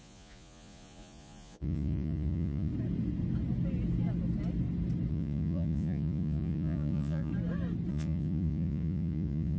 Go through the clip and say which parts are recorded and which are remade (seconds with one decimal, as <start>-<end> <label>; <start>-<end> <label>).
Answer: 0.0-2.7 remade; 2.7-5.1 recorded; 5.1-7.3 remade; 7.3-7.9 recorded; 7.9-9.6 remade